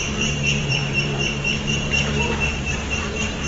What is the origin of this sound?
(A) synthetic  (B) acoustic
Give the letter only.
A